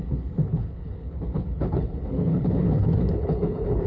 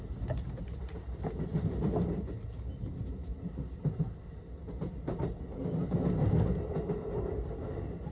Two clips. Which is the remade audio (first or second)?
first